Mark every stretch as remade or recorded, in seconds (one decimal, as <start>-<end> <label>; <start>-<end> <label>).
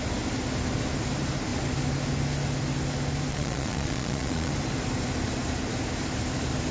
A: 0.0-3.3 recorded; 3.3-4.5 remade; 4.5-6.7 recorded